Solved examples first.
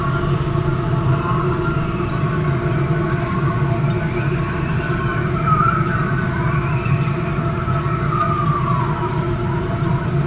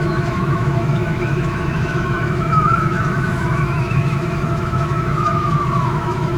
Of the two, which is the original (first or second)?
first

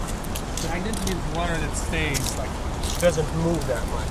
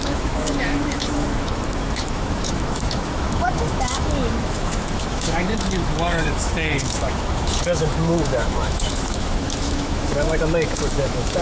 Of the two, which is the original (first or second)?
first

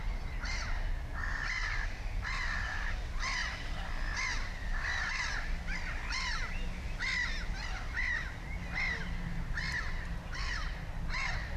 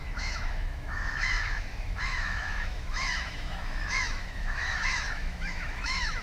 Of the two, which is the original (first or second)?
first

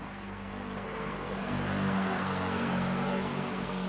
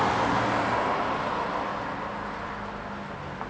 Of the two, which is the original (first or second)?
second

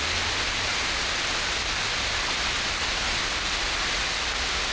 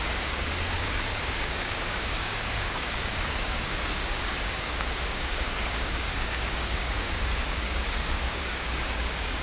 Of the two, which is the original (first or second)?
first